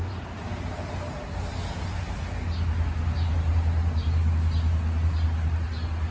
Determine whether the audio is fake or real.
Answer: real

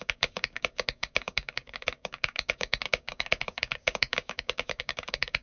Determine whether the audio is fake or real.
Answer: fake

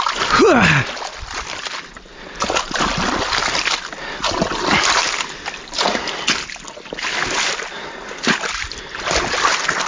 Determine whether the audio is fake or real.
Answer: real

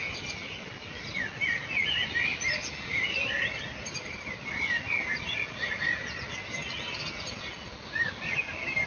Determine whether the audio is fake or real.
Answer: real